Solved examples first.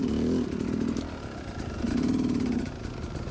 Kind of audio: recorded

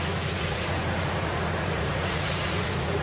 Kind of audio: remade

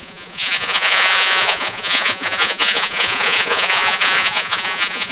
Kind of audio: remade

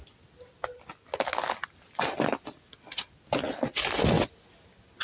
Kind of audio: recorded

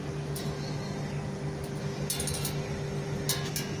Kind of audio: recorded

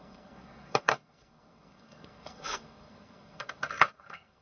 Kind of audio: remade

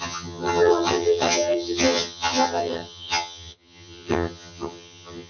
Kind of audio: remade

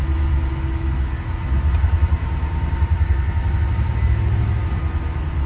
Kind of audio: recorded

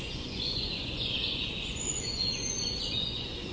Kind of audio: remade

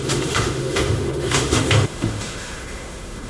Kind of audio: remade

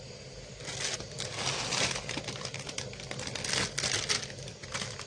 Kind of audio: recorded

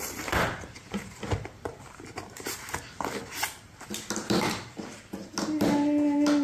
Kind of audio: recorded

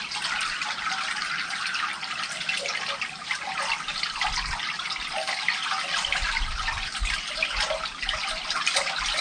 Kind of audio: recorded